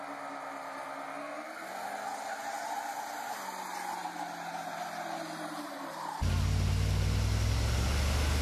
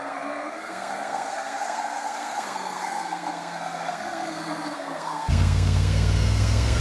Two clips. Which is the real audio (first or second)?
first